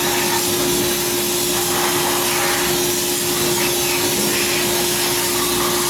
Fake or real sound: real